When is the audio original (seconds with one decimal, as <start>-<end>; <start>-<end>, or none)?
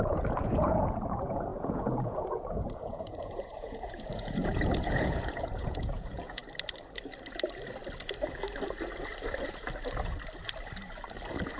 6.4-11.6